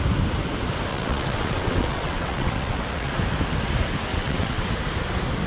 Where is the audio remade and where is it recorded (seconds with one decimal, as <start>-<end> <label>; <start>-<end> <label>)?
0.0-0.9 recorded; 0.9-3.1 remade; 3.1-4.1 recorded; 4.1-4.7 remade; 4.7-5.5 recorded